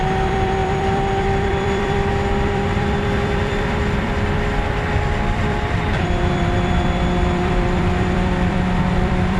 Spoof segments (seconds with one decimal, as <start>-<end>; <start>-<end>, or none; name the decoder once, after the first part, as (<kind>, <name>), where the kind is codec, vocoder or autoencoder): 0.0-9.4 (vocoder, BigVGAN v2)